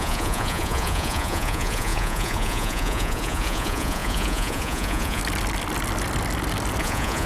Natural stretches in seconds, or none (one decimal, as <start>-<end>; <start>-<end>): 5.2-6.8